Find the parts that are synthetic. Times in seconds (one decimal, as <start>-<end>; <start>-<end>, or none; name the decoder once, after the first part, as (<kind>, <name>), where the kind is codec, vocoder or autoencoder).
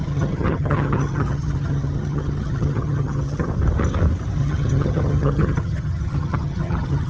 0.0-3.5 (vocoder, HiFi-GAN); 4.4-7.1